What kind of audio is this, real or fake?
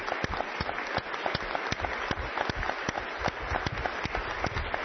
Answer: real